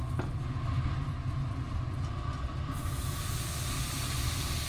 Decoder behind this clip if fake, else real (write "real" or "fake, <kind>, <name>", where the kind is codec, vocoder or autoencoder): real